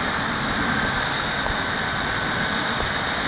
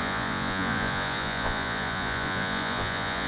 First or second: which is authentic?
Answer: first